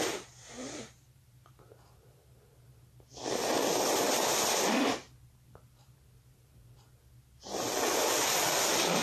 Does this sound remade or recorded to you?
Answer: recorded